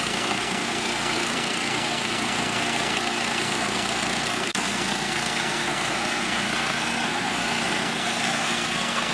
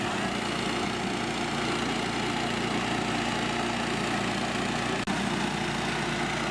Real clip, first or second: second